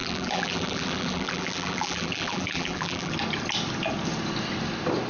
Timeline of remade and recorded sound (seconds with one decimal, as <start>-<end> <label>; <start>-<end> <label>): 0.0-3.1 remade; 3.1-5.1 recorded